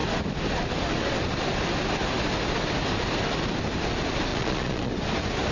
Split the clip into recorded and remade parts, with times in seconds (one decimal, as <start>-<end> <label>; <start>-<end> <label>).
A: 0.0-4.3 recorded; 4.3-4.9 remade; 4.9-5.5 recorded